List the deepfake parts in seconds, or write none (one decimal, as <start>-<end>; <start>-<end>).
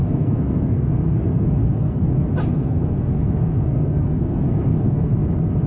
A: 0.0-2.1; 2.5-5.1